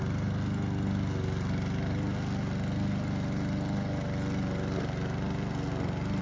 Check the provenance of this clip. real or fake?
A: real